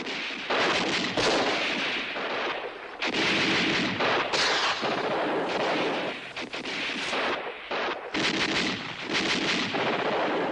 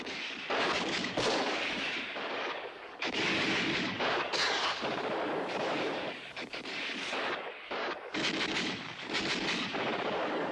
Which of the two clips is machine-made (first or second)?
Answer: second